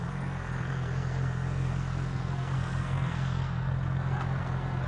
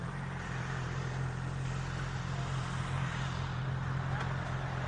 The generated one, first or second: first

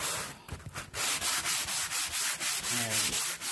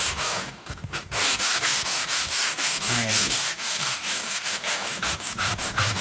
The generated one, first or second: second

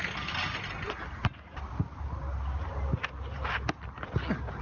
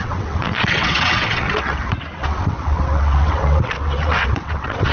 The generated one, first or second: second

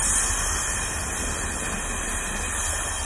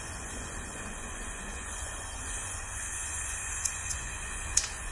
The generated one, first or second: second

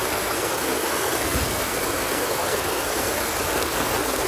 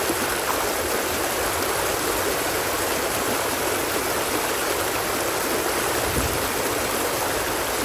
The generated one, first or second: first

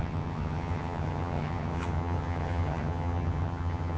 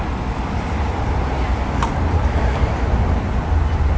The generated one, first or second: first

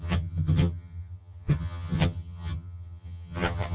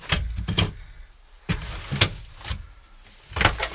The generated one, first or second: first